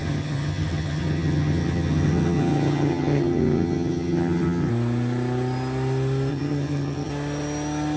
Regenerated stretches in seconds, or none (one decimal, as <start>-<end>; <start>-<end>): 0.0-4.7; 6.3-7.1